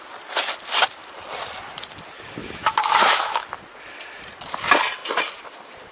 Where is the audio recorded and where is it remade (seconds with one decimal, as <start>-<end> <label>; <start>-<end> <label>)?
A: 0.0-2.4 recorded; 2.4-3.4 remade; 3.4-5.9 recorded